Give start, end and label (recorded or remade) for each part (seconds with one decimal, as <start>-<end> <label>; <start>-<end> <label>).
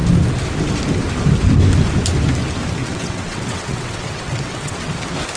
0.0-2.8 recorded; 2.8-4.9 remade; 4.9-5.4 recorded